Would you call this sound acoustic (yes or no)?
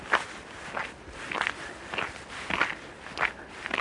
yes